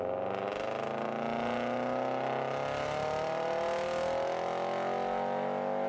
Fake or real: real